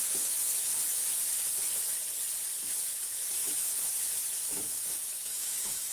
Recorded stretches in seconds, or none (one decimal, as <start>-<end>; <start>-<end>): 0.7-2.6

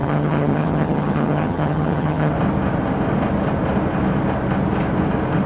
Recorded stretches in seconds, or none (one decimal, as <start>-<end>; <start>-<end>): 2.3-5.5

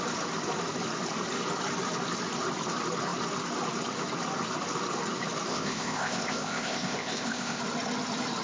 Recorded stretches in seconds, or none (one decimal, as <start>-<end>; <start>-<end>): 0.0-5.5; 7.6-8.4

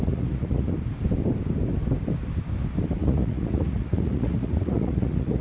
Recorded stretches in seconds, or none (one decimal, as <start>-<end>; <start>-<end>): 0.7-3.0

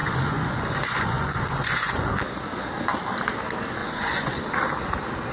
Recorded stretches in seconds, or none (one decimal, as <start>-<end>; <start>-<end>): 2.1-3.8; 4.4-5.3

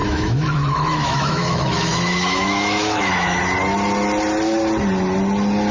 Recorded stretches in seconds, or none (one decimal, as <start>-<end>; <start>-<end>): 3.4-5.7

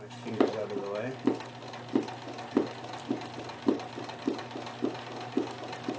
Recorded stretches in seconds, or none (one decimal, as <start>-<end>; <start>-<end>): 0.0-6.0

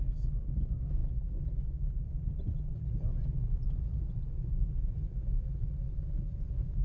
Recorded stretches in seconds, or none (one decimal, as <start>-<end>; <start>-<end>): 0.0-6.8